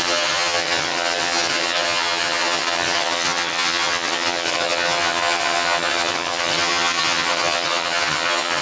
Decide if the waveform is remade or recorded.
remade